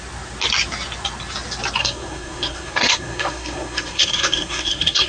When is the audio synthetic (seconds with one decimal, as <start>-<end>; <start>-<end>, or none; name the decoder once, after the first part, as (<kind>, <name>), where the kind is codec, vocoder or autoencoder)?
1.8-5.1 (codec, SNAC)